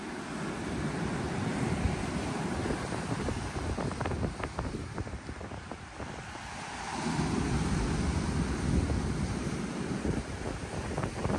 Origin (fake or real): real